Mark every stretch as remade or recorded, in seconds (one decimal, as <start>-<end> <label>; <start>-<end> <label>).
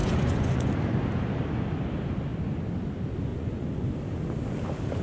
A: 0.0-0.7 remade; 0.7-3.3 recorded; 3.3-3.9 remade; 3.9-5.0 recorded